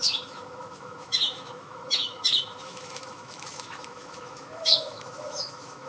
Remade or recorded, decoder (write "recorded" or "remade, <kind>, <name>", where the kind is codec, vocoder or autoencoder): remade, autoencoder, DAC-VAE